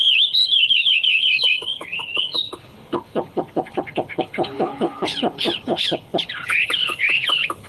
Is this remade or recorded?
remade